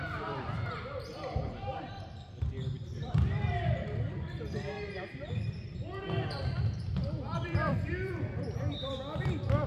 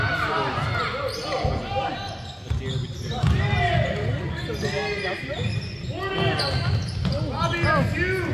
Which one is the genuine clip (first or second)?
second